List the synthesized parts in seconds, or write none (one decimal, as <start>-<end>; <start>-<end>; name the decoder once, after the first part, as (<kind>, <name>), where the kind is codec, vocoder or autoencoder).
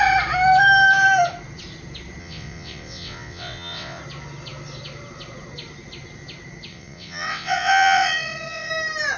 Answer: 2.2-4.0 (vocoder, WaveNeXt); 6.7-8.7